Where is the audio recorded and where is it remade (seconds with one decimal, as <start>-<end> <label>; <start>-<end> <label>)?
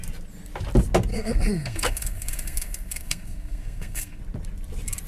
0.0-1.1 recorded; 1.1-4.2 remade; 4.2-5.1 recorded